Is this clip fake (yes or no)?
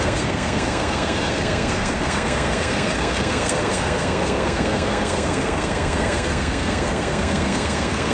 yes